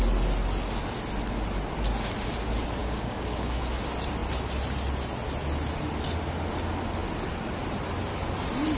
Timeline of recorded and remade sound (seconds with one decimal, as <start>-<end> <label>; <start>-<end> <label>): 0.0-2.8 recorded; 2.8-3.8 remade; 3.8-8.8 recorded